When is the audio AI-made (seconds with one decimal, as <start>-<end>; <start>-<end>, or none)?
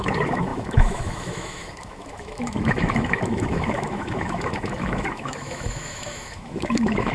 0.0-7.1